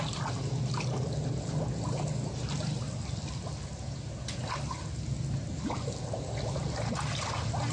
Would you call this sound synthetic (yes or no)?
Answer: no